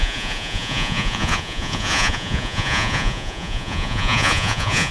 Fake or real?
fake